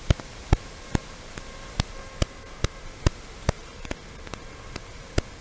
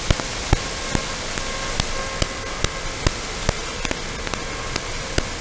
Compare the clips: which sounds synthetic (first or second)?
first